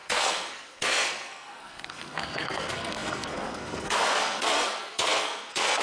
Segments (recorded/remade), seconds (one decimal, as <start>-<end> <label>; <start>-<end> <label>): 0.0-5.8 remade